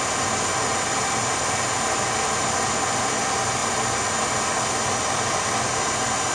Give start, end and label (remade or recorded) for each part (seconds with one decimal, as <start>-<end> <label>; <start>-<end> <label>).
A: 0.0-6.3 recorded